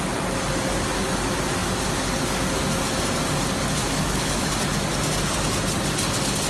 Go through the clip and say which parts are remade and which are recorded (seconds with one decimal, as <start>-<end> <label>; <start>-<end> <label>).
0.0-3.8 recorded; 3.8-4.5 remade; 4.5-6.5 recorded